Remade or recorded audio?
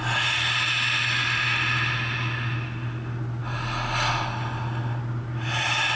recorded